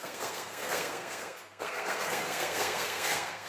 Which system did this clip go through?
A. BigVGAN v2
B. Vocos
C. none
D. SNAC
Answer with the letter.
D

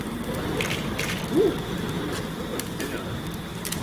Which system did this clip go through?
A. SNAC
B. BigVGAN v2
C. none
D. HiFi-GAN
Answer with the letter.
C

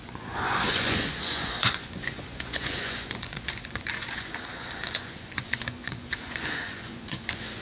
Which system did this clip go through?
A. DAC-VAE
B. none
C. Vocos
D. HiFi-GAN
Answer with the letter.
C